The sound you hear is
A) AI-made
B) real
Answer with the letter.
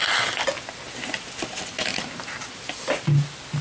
B